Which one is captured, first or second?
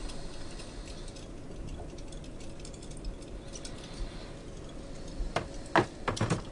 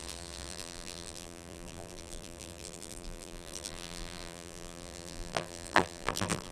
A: first